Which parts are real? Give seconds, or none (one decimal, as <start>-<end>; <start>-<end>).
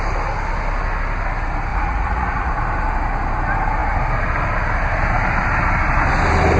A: 0.0-1.7; 2.5-6.6